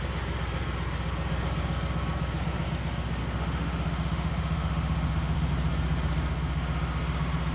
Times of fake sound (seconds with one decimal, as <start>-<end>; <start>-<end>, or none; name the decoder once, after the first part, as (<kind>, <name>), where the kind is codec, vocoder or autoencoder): 3.2-5.5 (autoencoder, DAC-VAE)